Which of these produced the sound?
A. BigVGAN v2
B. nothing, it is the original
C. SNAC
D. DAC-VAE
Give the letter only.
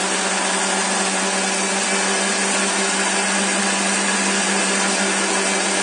B